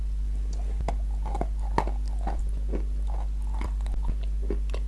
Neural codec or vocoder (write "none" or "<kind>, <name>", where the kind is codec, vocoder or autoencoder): none